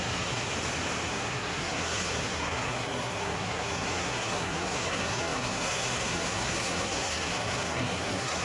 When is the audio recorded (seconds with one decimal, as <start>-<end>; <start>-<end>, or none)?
0.5-1.1